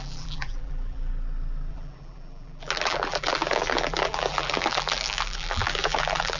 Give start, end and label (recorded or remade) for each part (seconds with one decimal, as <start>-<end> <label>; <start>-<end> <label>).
0.0-1.1 remade; 1.1-1.7 recorded; 1.7-6.4 remade